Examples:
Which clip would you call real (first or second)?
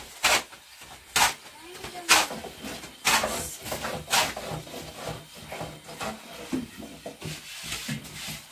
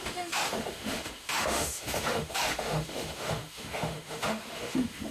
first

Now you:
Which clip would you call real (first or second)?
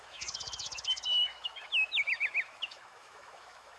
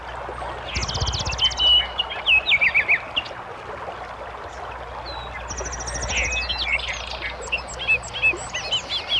second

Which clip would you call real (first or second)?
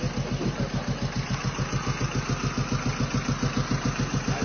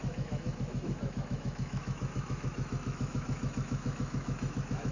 first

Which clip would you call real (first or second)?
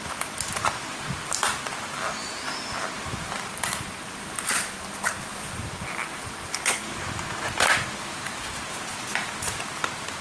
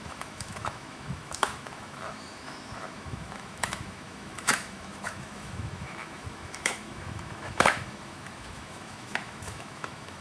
first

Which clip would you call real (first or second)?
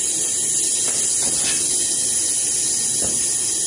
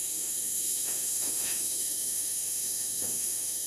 first